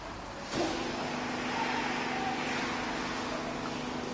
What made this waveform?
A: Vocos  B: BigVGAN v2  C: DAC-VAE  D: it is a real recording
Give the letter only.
D